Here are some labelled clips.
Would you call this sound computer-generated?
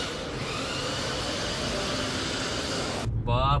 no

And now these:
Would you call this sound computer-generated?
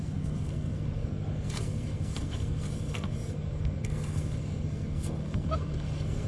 yes